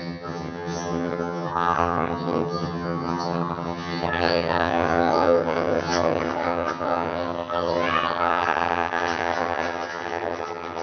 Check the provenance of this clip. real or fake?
fake